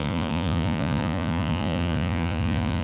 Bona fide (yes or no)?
no